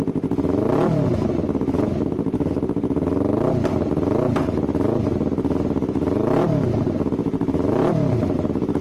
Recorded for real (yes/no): yes